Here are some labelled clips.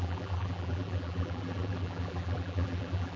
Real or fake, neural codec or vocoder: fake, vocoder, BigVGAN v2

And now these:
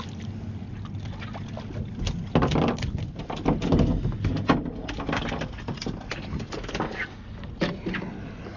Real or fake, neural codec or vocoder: real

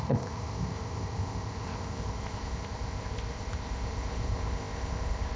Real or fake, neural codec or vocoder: fake, codec, ZipCodec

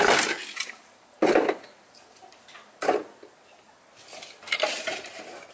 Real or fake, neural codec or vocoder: real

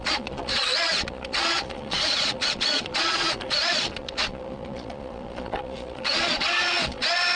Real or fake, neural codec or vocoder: fake, vocoder, Vocos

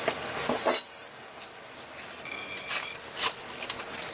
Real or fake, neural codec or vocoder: real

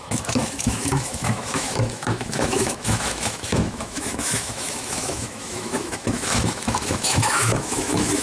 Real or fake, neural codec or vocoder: fake, autoencoder, DAC-VAE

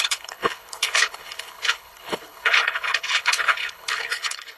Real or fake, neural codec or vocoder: fake, codec, HILCodec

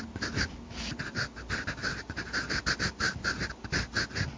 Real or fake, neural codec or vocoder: real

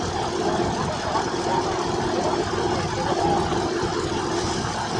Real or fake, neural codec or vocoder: real